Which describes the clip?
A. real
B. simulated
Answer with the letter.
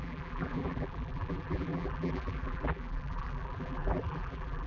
B